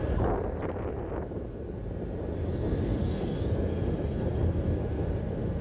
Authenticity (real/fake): real